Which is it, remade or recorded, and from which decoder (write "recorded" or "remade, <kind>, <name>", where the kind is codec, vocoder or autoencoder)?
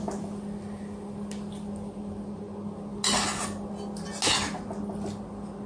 recorded